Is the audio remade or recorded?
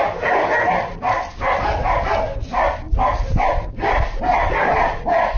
recorded